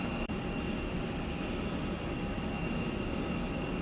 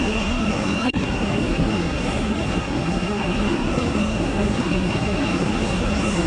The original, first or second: first